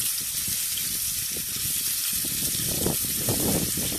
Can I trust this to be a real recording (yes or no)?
yes